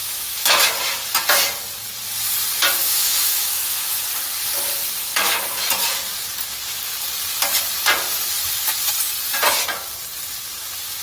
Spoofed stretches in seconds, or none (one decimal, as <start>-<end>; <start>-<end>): 0.0-0.7; 2.8-4.0